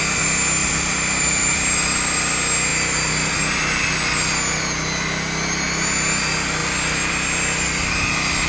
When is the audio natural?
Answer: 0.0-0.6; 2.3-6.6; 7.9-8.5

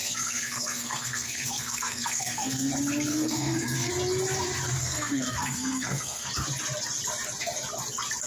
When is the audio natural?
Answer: 2.7-3.1; 3.9-4.8; 6.3-8.3

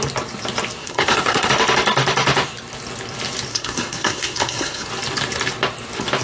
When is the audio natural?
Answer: 0.0-0.8; 1.5-3.5; 4.9-6.2

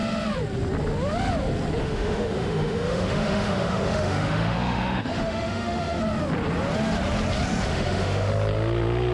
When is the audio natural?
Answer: 0.0-1.8; 6.0-7.7; 8.3-9.1

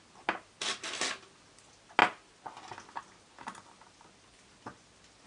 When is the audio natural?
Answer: 0.0-5.3

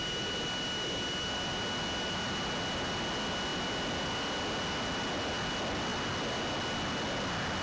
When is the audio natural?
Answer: 0.0-7.6

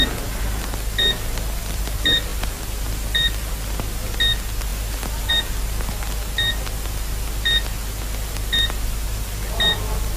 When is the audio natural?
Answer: 0.0-2.3; 3.5-10.2